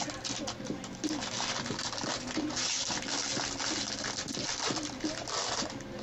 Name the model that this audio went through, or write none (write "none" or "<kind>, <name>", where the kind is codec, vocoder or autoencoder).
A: none